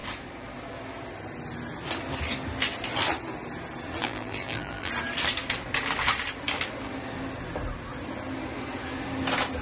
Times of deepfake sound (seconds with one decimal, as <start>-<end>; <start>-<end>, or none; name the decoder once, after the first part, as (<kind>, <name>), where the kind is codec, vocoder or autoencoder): 4.0-4.9 (vocoder, BigVGAN v2)